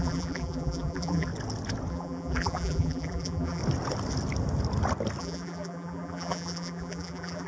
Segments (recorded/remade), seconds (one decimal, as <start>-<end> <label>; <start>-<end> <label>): 0.0-1.3 remade; 1.3-1.9 recorded; 1.9-3.6 remade; 3.6-5.2 recorded; 5.2-7.5 remade